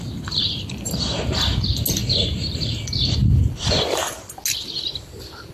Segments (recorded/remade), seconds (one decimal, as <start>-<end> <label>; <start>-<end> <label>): 0.0-5.5 recorded

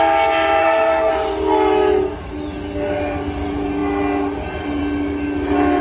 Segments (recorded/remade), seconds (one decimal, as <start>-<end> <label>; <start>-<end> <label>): 0.0-0.6 recorded; 0.6-1.1 remade; 1.1-5.8 recorded

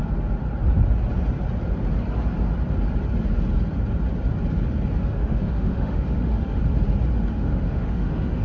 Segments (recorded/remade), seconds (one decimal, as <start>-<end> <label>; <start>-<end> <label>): 0.0-5.0 recorded; 5.0-6.6 remade; 6.6-7.3 recorded; 7.3-8.4 remade

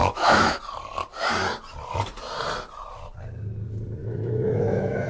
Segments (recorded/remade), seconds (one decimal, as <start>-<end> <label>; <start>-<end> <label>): 0.0-0.6 remade; 0.6-4.0 recorded; 4.0-5.1 remade

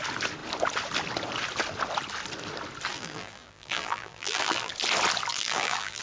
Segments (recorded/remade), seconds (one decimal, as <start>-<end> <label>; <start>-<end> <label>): 0.0-2.9 recorded; 2.9-4.7 remade; 4.7-5.3 recorded; 5.3-6.0 remade

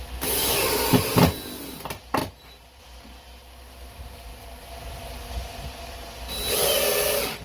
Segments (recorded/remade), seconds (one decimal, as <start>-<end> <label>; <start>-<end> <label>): 0.0-2.2 recorded; 2.2-2.8 remade; 2.8-7.4 recorded